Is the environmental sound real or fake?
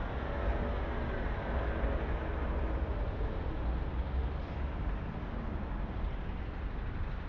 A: real